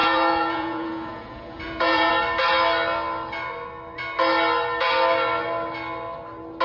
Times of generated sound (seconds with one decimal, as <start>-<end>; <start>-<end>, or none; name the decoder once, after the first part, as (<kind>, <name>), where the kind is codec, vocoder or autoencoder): 0.0-2.1 (vocoder, Vocos)